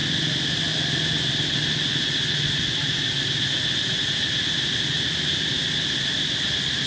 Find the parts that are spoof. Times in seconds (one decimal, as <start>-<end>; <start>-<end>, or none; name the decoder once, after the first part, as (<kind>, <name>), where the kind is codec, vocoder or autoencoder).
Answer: none